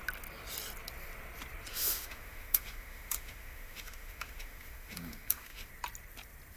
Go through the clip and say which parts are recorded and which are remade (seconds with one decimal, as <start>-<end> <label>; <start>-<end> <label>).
0.0-1.7 recorded; 1.7-5.7 remade; 5.7-6.6 recorded